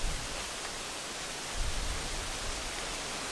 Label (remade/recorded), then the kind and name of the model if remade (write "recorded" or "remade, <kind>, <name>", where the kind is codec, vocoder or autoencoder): recorded